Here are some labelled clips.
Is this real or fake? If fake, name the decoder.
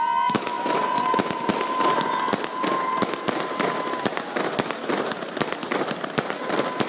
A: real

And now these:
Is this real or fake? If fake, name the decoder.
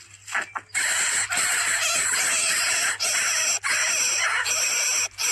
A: real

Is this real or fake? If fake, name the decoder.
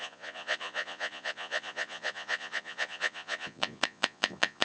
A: fake, vocoder, Vocos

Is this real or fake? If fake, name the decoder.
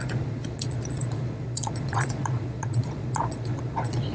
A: fake, vocoder, Vocos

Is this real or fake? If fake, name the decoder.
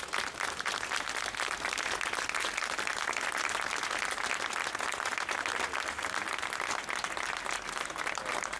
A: real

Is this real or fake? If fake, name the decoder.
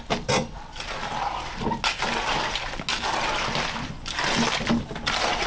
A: real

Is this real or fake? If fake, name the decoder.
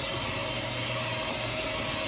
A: real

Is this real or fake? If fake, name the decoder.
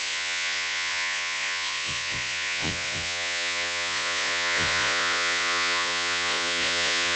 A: fake, vocoder, Vocos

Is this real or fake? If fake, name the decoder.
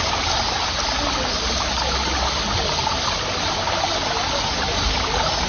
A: real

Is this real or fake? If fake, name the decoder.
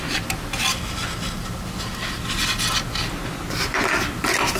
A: real